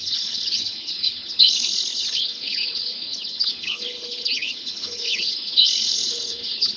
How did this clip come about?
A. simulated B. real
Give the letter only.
A